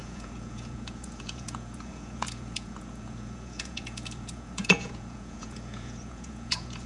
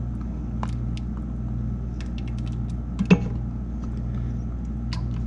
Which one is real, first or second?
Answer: second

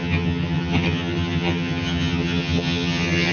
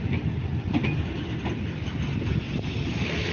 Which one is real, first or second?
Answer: second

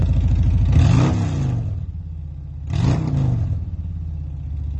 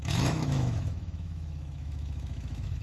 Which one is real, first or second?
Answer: first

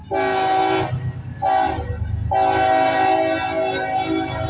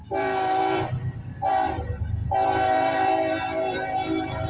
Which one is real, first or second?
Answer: first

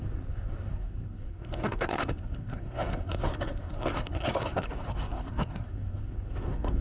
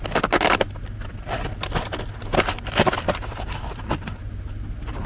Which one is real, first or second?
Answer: second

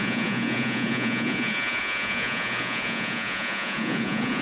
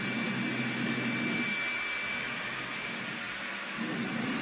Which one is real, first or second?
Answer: second